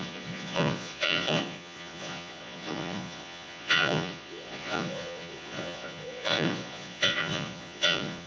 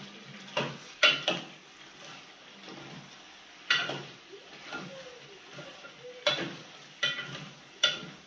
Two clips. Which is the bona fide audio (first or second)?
second